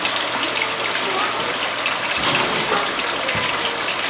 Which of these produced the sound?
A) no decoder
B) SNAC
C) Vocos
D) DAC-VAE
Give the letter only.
A